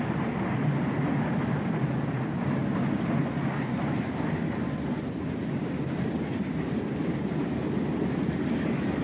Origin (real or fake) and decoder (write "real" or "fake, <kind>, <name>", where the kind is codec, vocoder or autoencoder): real